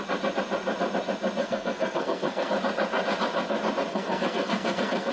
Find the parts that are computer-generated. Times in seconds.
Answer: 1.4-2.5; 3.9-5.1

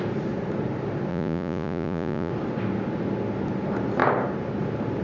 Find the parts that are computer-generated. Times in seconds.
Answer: 1.1-2.3